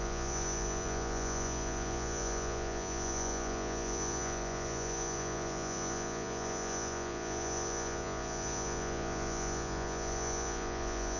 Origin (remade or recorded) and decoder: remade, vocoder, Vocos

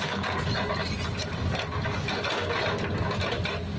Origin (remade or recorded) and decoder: recorded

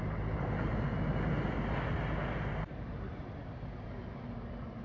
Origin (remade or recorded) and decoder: recorded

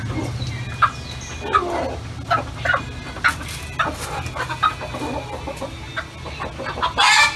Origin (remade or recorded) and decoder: recorded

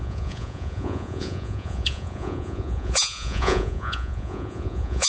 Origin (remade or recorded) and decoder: remade, vocoder, Vocos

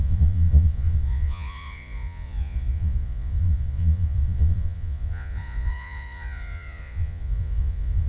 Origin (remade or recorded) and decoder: remade, vocoder, Vocos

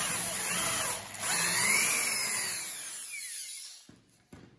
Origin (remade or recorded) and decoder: recorded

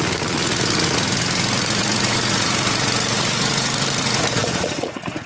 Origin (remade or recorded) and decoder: remade, vocoder, Vocos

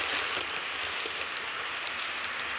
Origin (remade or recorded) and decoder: recorded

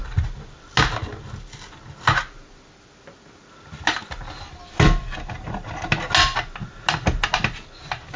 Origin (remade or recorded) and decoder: recorded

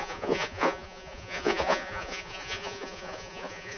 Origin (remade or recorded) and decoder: remade, vocoder, Vocos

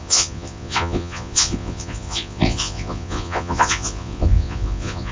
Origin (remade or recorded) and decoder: remade, vocoder, Vocos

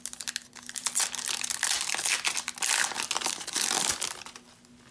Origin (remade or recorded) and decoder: recorded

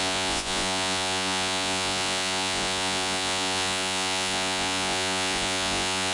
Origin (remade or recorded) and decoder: remade, vocoder, Vocos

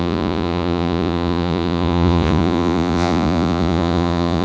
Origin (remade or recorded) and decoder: remade, vocoder, Vocos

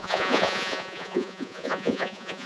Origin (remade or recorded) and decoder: remade, vocoder, Vocos